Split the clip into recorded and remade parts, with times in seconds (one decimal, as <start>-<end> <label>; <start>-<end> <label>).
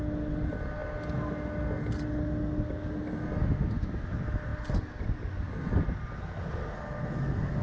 0.0-7.6 recorded